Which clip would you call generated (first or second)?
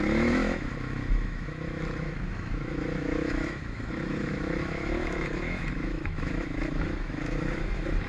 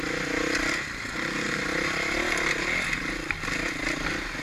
first